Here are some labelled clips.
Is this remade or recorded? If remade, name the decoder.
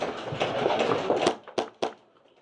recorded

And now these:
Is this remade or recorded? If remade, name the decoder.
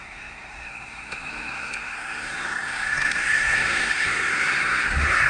remade, codec, SNAC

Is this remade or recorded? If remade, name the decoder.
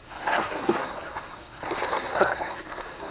remade, codec, SNAC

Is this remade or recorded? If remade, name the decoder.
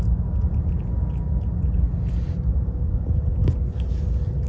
recorded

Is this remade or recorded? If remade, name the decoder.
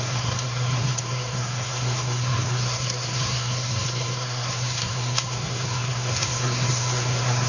remade, codec, SNAC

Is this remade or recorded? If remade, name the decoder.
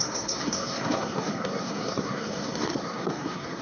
remade, codec, SNAC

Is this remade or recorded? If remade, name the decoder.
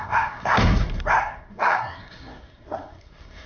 remade, codec, SNAC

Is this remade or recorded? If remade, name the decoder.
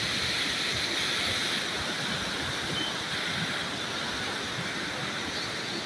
recorded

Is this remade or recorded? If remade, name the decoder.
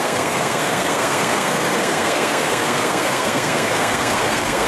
remade, codec, SNAC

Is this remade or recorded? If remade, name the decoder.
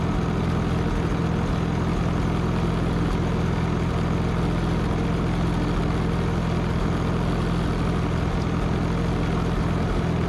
recorded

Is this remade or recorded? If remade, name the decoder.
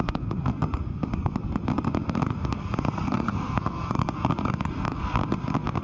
remade, codec, SNAC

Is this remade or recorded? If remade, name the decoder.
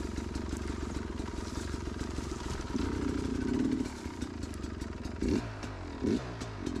recorded